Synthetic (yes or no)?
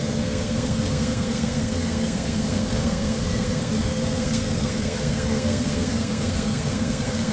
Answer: yes